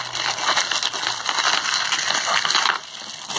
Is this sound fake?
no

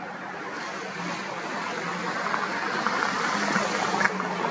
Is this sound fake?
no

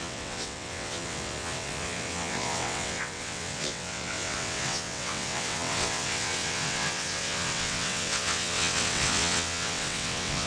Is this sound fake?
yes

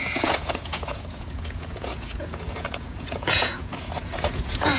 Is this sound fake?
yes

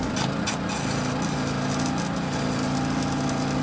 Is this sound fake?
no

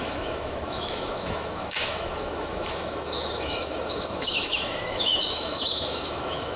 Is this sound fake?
yes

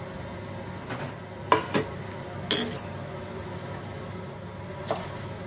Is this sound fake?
no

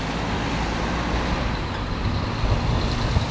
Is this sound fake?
no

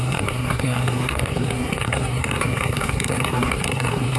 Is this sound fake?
yes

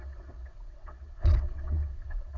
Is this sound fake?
yes